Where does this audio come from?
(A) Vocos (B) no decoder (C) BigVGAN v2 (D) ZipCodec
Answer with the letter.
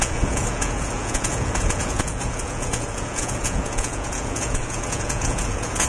A